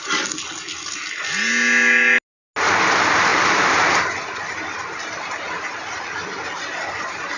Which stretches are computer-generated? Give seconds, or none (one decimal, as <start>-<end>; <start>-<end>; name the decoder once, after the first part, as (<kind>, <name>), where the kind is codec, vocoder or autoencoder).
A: 3.3-4.5 (vocoder, BigVGAN v2)

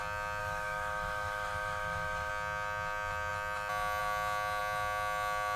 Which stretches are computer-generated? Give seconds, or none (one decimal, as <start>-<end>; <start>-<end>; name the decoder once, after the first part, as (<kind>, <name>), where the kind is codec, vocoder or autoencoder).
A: 0.4-2.3 (autoencoder, DAC-VAE)

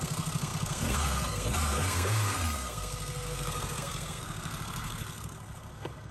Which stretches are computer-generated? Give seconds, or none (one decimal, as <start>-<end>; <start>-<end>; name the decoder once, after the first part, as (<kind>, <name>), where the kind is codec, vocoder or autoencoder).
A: 0.0-6.1 (codec, SNAC)